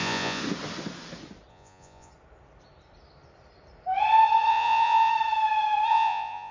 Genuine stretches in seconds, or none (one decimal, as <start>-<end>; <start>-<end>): 0.4-1.5; 2.1-4.5; 5.1-5.9